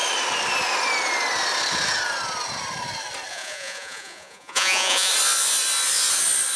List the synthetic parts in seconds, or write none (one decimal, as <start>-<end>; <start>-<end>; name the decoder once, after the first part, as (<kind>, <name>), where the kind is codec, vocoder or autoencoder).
3.3-5.1 (vocoder, Vocos)